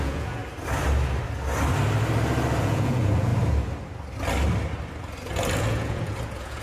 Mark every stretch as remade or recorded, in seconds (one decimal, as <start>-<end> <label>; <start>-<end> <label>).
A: 0.0-0.4 remade; 0.4-2.6 recorded; 2.6-3.3 remade; 3.3-5.6 recorded; 5.6-6.6 remade